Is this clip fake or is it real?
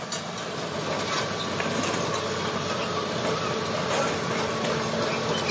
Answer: real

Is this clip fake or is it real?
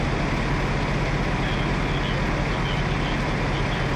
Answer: real